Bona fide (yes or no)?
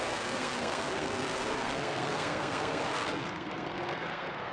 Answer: no